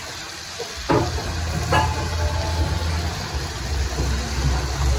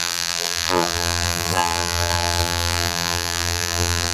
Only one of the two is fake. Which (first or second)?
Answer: second